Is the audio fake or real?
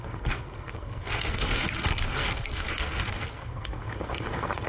fake